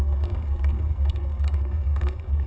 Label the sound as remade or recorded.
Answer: remade